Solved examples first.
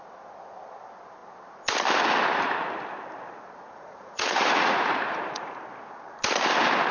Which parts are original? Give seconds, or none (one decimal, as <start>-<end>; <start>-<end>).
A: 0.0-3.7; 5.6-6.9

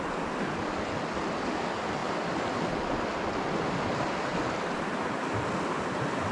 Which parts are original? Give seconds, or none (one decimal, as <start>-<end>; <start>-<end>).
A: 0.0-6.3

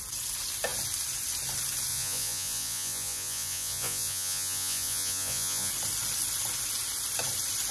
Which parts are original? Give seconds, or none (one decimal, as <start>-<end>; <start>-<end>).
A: 0.0-1.9; 5.7-7.7

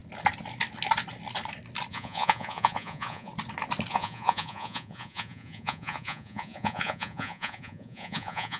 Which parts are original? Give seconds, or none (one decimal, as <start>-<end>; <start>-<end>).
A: 0.0-1.9; 3.3-3.9